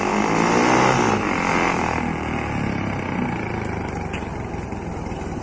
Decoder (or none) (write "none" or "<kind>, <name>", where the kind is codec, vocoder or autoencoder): none